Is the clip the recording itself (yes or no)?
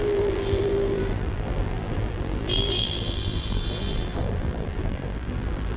no